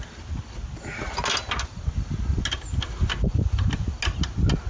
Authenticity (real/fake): real